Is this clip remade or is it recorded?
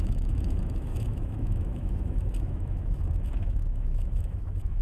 remade